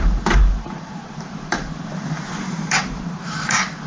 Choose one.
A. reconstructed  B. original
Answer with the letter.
A